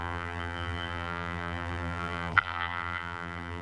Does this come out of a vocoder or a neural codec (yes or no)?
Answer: yes